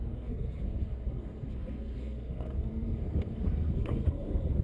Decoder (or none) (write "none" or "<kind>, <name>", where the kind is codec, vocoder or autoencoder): codec, SNAC